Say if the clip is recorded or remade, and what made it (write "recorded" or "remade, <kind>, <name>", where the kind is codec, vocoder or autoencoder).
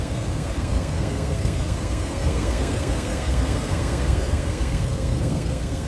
remade, codec, SNAC